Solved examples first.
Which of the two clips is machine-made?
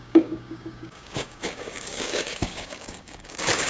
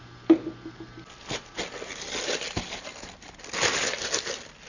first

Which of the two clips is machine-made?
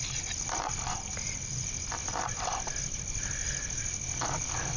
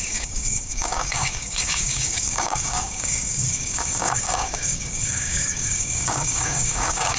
second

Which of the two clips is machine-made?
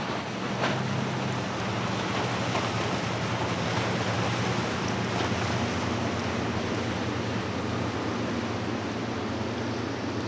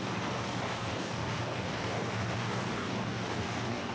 second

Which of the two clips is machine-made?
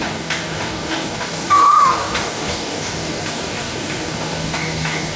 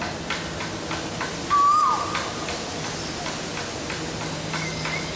first